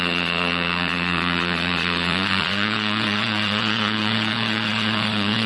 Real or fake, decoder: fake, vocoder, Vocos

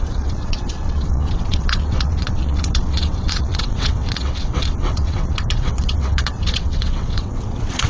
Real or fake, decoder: fake, vocoder, WaveNeXt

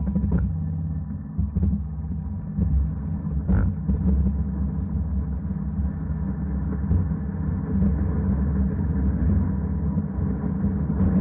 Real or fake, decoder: real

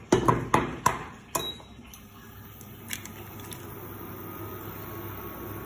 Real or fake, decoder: real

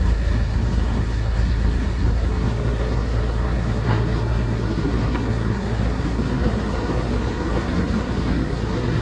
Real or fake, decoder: fake, codec, SNAC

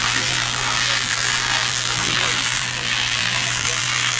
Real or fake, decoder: fake, vocoder, BigVGAN v2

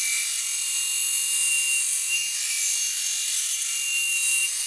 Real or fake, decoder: real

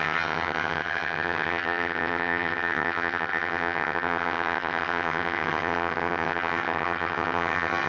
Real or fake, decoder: fake, vocoder, HiFi-GAN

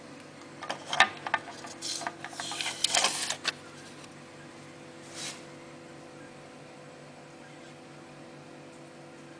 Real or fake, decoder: real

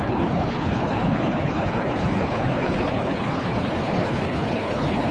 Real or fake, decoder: fake, codec, HILCodec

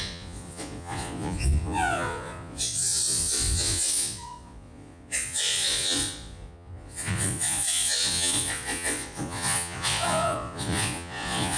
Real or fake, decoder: fake, vocoder, Vocos